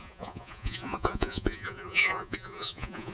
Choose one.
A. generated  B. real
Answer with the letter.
A